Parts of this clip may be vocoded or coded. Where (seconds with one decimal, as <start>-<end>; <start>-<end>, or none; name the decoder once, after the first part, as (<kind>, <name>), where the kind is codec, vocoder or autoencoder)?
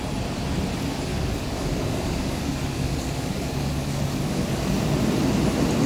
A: 1.1-4.5 (codec, DAC)